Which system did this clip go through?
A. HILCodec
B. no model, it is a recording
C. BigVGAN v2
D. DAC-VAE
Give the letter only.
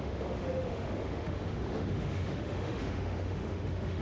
D